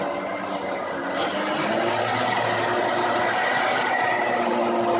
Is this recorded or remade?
recorded